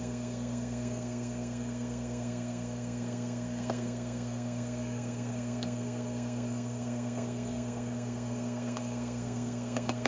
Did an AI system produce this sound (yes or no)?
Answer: yes